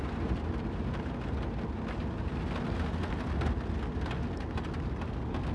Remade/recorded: recorded